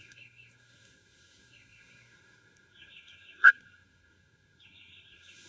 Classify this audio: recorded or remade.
remade